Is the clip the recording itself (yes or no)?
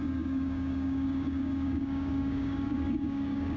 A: no